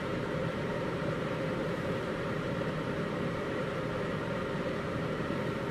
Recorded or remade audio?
remade